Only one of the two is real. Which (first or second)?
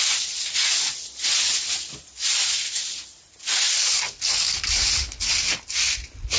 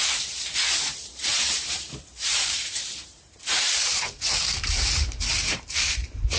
first